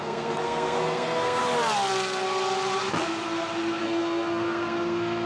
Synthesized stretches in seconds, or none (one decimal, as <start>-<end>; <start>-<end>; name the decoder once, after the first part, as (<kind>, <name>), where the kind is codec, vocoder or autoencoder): 0.0-1.4 (codec, SNAC); 3.8-5.3